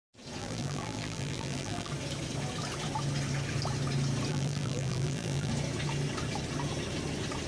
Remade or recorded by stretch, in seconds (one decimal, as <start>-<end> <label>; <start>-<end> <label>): 0.0-0.4 recorded; 0.4-1.9 remade; 1.9-4.3 recorded; 4.3-5.5 remade; 5.5-7.5 recorded